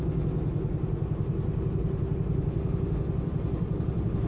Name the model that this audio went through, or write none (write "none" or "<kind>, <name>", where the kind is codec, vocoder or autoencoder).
none